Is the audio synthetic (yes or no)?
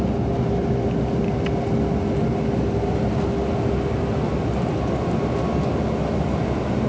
no